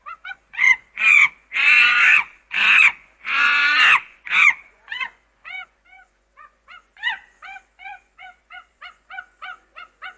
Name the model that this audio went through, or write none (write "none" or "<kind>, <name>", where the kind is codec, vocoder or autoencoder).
vocoder, Vocos